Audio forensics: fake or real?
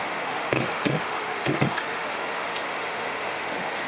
fake